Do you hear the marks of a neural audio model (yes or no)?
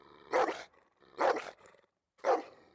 yes